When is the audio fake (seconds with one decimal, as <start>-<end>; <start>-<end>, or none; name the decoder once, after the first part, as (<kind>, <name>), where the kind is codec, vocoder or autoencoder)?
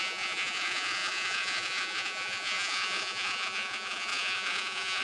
0.0-5.0 (vocoder, Vocos)